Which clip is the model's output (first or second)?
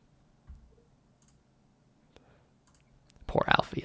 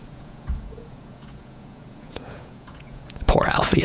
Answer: second